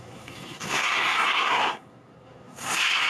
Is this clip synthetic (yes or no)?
yes